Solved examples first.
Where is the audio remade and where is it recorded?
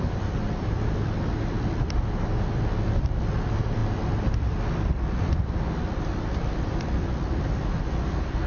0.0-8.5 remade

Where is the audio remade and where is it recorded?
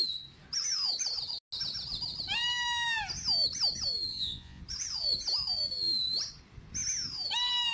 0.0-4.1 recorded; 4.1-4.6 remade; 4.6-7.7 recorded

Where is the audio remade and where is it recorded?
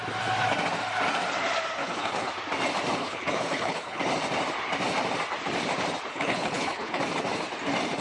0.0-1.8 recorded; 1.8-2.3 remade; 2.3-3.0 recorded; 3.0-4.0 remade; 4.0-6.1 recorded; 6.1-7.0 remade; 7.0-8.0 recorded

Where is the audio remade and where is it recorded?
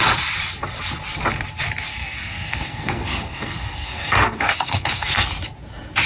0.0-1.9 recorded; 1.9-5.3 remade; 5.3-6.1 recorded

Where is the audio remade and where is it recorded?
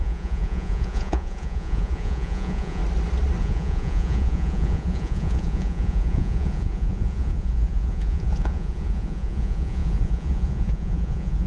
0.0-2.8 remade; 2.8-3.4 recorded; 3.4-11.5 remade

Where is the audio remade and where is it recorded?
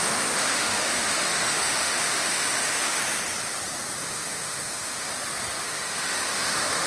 0.0-3.0 remade; 3.0-4.0 recorded; 4.0-5.1 remade; 5.1-5.6 recorded; 5.6-6.9 remade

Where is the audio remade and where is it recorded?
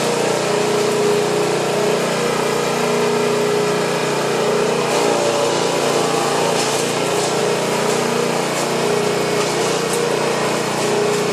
0.0-4.0 recorded; 4.0-4.8 remade; 4.8-11.3 recorded